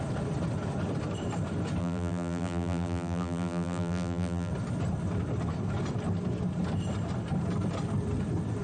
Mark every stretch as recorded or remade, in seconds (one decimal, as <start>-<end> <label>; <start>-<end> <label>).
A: 0.0-1.8 recorded; 1.8-4.5 remade; 4.5-8.6 recorded